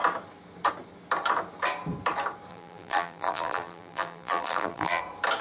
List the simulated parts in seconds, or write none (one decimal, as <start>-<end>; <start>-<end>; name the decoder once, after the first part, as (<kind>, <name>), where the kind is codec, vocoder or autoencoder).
2.5-5.0 (vocoder, BigVGAN v2)